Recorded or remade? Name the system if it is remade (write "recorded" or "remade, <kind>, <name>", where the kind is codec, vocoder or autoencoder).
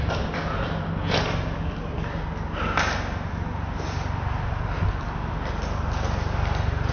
recorded